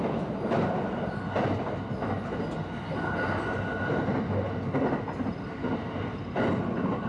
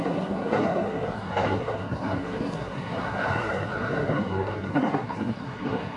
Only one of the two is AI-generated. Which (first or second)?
second